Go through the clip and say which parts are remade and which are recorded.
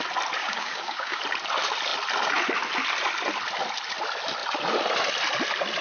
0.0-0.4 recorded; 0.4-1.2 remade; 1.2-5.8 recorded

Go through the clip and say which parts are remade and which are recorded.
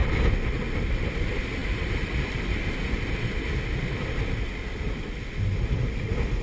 0.0-6.4 recorded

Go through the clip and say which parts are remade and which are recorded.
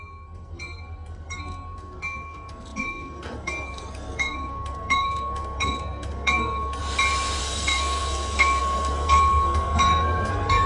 0.0-6.8 remade; 6.8-7.4 recorded; 7.4-10.7 remade